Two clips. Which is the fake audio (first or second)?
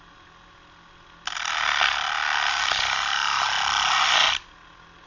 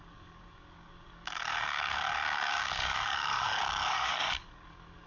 second